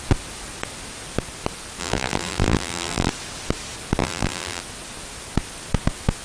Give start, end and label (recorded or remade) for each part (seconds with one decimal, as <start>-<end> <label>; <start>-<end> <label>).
0.0-1.8 recorded; 1.8-3.1 remade; 3.1-4.0 recorded; 4.0-4.6 remade; 4.6-6.2 recorded